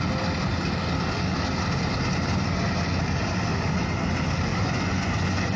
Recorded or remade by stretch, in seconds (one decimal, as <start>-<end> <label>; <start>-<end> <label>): 0.0-4.5 recorded; 4.5-5.6 remade